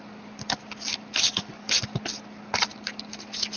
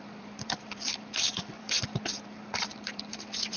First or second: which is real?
first